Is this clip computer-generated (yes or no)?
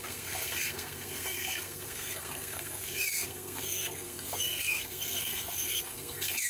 yes